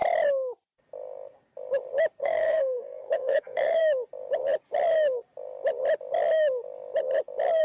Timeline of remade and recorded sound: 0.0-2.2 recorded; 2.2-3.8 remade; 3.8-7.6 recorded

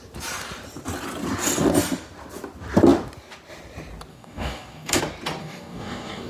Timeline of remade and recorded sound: 0.0-4.1 recorded; 4.1-5.0 remade; 5.0-5.4 recorded; 5.4-6.3 remade